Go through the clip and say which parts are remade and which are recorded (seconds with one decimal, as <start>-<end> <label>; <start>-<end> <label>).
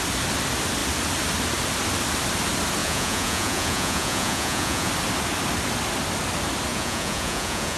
0.0-2.8 recorded; 2.8-4.9 remade; 4.9-6.7 recorded; 6.7-7.8 remade